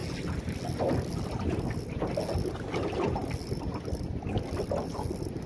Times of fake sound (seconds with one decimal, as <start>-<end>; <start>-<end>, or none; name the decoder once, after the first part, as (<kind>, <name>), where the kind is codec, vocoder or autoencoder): none